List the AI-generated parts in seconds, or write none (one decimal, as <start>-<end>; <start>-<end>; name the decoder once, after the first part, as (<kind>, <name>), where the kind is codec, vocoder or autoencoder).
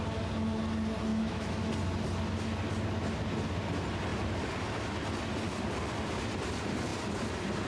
1.1-1.7 (autoencoder, DAC-VAE)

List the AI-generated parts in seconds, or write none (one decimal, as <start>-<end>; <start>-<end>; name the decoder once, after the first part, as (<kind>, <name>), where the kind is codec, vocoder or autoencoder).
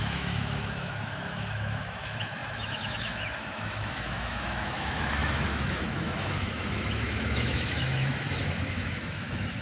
0.0-9.6 (autoencoder, DAC-VAE)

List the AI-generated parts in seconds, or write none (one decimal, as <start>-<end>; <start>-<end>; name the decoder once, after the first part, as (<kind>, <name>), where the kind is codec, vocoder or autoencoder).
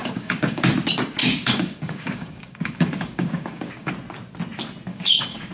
0.0-0.7 (codec, DAC); 1.2-3.9; 4.9-5.5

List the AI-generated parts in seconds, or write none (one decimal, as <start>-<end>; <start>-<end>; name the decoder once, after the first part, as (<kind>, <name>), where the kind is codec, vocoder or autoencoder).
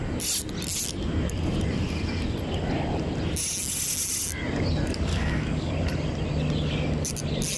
5.1-5.7 (codec, DAC)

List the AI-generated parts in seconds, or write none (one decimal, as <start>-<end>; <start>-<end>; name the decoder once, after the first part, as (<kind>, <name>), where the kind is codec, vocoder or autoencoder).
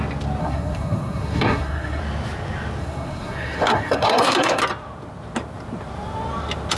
0.4-2.0 (codec, SNAC); 2.8-4.6